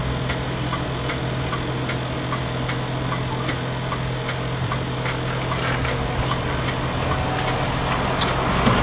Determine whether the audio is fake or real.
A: real